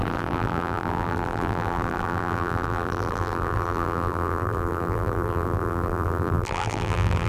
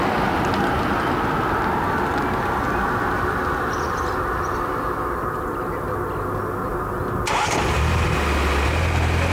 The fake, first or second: first